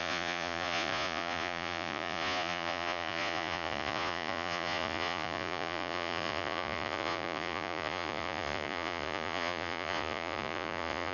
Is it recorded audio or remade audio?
remade